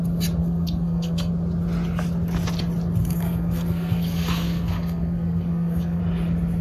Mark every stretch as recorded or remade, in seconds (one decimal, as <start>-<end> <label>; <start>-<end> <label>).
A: 0.0-0.4 recorded; 0.4-1.3 remade; 1.3-3.0 recorded; 3.0-6.0 remade; 6.0-6.6 recorded